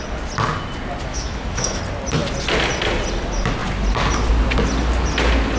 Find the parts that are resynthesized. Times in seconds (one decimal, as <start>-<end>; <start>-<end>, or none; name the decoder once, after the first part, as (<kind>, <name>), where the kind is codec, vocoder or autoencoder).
1.1-1.8 (autoencoder, DAC-VAE)